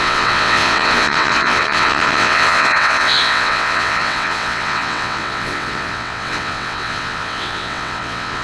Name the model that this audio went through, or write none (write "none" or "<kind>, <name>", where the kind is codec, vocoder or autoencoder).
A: vocoder, WaveNeXt